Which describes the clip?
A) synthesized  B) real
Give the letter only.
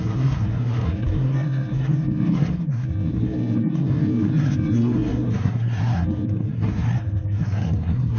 A